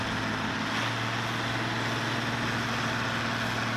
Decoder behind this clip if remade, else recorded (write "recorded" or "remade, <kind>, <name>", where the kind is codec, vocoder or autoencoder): recorded